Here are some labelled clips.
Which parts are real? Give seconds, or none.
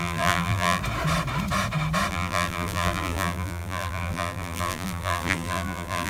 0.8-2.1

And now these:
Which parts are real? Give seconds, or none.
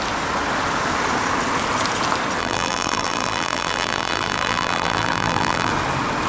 0.0-2.4; 5.7-6.3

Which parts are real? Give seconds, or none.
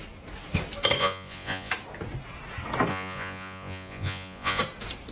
0.0-1.0; 1.7-2.9; 4.6-5.1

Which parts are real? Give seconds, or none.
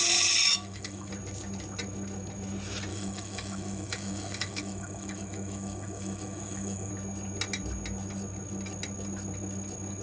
0.0-0.5; 1.1-2.9; 6.9-10.0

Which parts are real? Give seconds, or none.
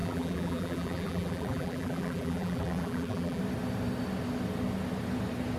3.4-5.6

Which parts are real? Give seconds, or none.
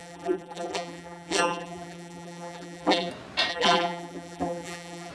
3.1-3.5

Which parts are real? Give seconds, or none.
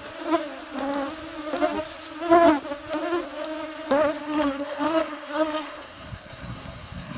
0.0-4.2